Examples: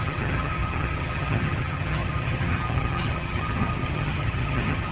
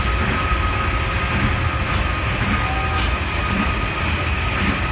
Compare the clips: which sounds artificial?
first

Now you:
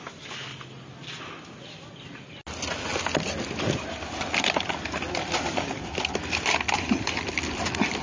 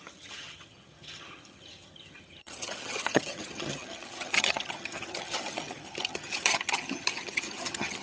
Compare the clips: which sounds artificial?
second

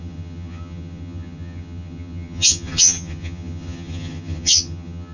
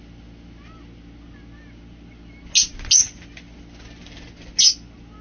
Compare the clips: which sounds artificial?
first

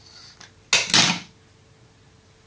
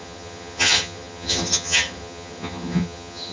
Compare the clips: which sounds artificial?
second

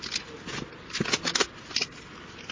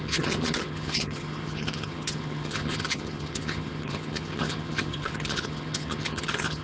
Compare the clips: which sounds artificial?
second